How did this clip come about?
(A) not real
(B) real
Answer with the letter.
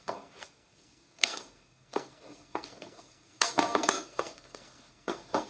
A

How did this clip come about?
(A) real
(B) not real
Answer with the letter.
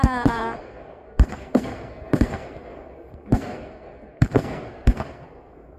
B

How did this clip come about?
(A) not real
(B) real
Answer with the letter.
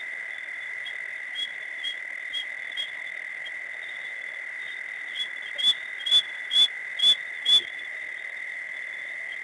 B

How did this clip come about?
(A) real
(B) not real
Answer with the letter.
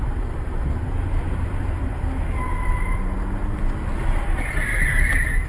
A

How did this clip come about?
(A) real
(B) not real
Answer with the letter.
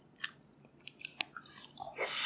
A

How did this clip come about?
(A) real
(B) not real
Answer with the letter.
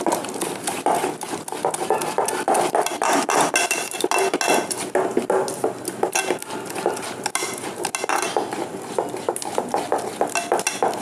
A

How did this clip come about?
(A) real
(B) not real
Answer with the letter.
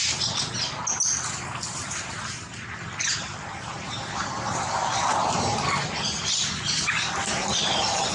A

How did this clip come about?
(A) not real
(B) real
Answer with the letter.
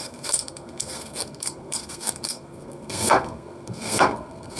A